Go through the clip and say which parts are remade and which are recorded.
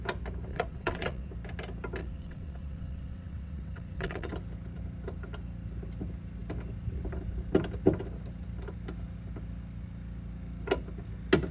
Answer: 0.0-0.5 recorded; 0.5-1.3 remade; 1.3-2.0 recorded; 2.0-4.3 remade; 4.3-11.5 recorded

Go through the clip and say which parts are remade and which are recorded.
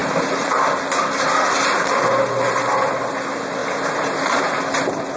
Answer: 0.0-5.2 recorded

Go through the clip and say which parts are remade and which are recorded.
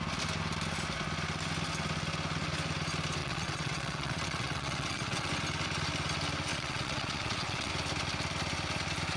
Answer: 0.0-3.2 recorded; 3.2-5.3 remade; 5.3-6.5 recorded; 6.5-7.7 remade; 7.7-9.2 recorded